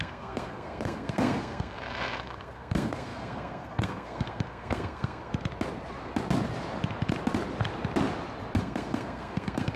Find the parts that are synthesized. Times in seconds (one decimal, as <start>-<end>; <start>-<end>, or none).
0.0-5.3; 8.6-9.8